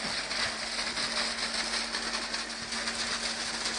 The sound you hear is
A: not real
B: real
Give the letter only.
B